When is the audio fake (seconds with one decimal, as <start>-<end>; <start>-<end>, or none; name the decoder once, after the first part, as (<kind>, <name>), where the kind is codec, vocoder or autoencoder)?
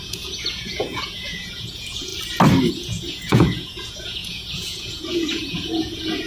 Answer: 0.0-2.1 (vocoder, Vocos); 2.7-6.3